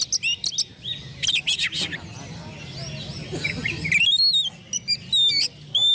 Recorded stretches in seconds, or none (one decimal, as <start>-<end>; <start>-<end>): 0.0-5.9